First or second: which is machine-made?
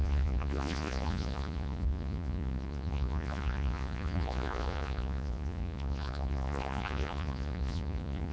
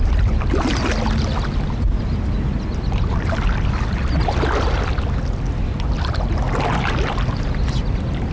first